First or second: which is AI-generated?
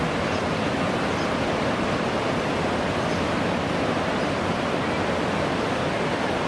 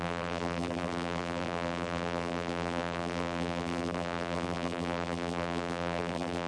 second